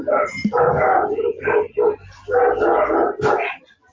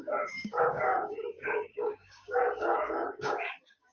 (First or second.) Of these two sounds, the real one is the first